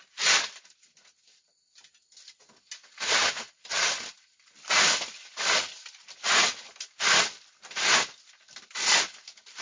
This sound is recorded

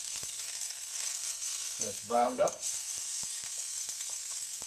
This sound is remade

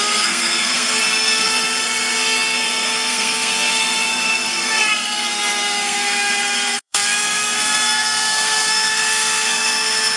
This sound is remade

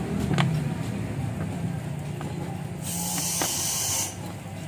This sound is recorded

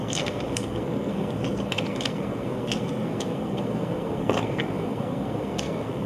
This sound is remade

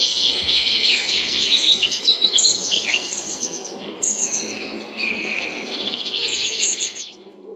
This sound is remade